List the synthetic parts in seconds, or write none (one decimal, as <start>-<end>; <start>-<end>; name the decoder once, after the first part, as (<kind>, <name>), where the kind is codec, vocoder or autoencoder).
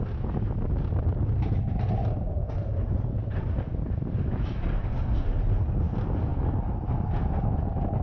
none